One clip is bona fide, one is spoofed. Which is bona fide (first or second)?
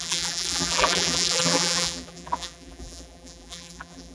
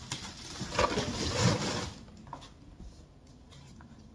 second